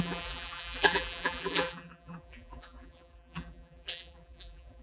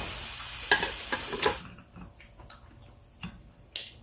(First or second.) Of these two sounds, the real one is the second